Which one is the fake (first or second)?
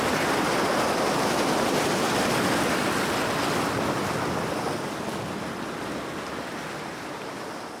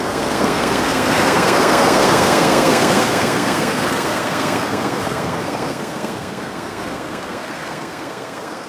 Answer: second